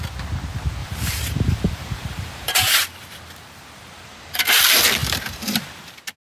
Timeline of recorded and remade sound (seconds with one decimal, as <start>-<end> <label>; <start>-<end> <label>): 0.0-0.8 recorded; 0.8-4.6 remade; 4.6-5.0 recorded; 5.0-6.0 remade; 6.0-6.4 recorded